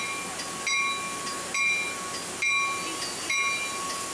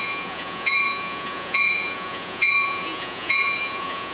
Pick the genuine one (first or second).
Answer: first